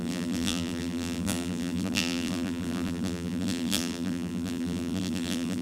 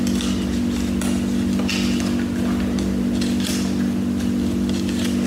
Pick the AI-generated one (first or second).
first